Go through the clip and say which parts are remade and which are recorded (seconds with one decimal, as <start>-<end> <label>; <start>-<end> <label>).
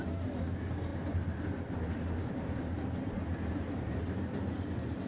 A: 0.0-5.1 recorded